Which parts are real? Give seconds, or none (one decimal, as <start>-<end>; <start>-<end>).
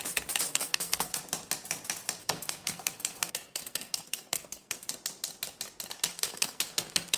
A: 0.0-0.5; 1.2-2.2; 4.9-6.1